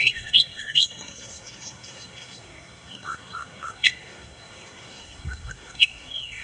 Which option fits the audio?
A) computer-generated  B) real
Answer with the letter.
A